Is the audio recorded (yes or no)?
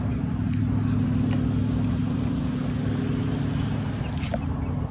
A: yes